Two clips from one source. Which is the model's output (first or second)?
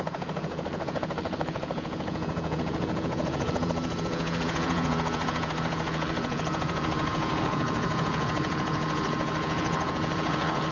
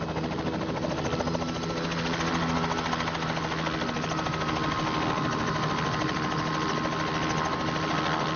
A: first